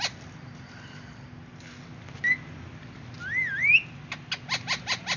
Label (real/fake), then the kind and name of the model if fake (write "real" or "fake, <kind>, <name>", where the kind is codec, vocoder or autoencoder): real